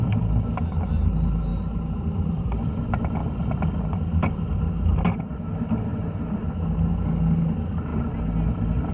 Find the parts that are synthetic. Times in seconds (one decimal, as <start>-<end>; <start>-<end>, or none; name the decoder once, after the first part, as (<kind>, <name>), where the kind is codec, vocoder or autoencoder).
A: 1.5-2.7 (vocoder, BigVGAN v2)

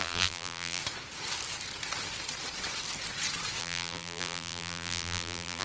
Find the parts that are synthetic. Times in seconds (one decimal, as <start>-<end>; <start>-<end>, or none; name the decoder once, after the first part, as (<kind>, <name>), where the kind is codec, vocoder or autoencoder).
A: 0.0-0.8 (vocoder, BigVGAN v2); 3.6-5.6